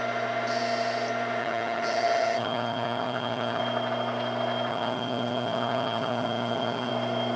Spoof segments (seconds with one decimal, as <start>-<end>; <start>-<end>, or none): 1.4-3.6; 4.7-6.9